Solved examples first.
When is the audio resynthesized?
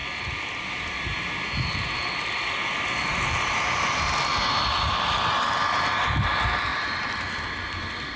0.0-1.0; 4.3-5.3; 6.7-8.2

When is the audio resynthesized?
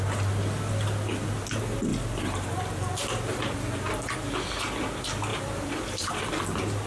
5.3-6.1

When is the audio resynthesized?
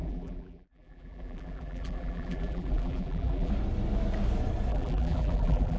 0.0-3.5; 4.7-5.8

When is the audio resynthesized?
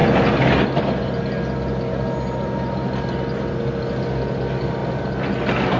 none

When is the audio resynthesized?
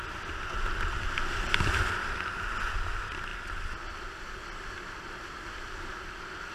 none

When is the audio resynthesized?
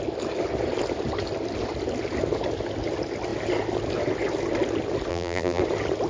5.1-5.6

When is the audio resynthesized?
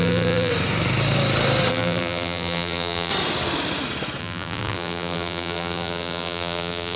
0.0-0.5; 1.7-3.1; 4.2-7.0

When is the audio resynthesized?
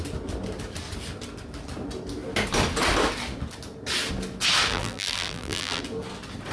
4.7-5.8